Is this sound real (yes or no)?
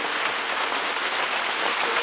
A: yes